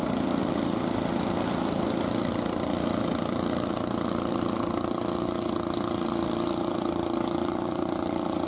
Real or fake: real